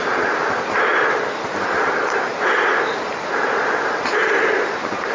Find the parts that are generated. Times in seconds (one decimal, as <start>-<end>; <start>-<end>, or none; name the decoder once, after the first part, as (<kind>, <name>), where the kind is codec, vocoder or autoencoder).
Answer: none